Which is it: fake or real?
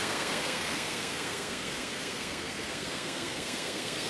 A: fake